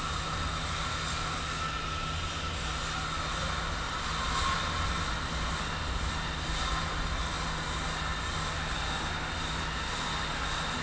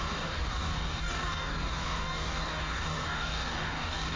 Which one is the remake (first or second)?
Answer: second